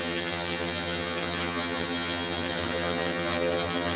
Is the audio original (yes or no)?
no